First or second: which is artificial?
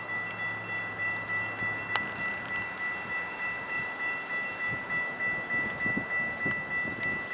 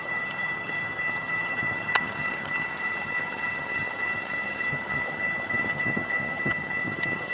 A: second